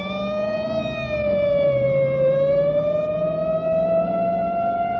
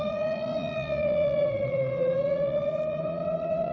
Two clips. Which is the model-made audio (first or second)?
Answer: second